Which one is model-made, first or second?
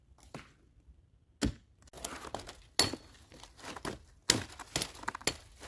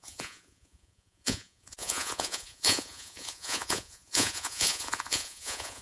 second